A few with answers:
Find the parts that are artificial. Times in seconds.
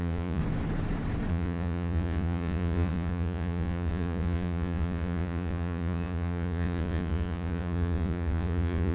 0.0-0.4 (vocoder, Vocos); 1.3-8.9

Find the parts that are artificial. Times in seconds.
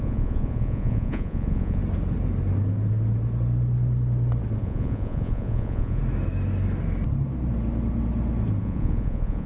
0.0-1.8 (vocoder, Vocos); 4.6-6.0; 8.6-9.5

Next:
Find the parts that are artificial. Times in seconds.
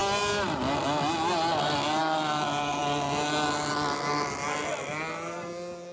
none